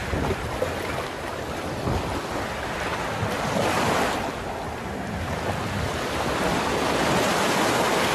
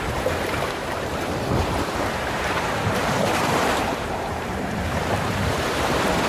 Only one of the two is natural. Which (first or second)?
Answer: first